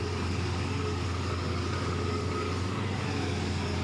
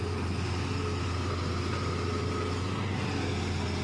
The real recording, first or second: second